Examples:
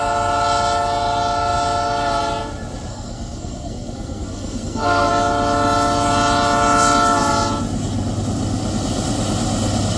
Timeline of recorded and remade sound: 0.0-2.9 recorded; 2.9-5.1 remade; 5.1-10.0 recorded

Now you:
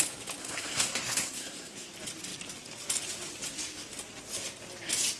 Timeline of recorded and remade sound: 0.0-0.4 recorded; 0.4-1.9 remade; 1.9-5.2 recorded

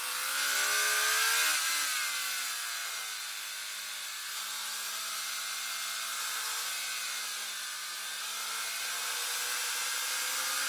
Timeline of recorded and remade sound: 0.0-10.7 recorded

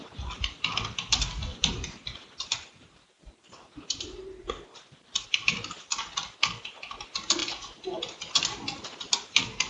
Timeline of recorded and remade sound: 0.0-1.5 recorded; 1.5-5.3 remade; 5.3-7.4 recorded; 7.4-8.0 remade; 8.0-9.7 recorded

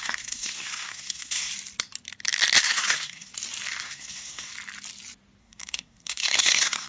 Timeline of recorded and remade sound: 0.0-1.5 remade; 1.5-2.6 recorded; 2.6-3.3 remade; 3.3-3.8 recorded; 3.8-4.5 remade; 4.5-5.4 recorded; 5.4-6.9 remade

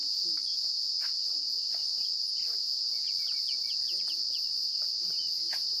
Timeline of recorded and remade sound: 0.0-1.6 recorded; 1.6-4.7 remade; 4.7-5.8 recorded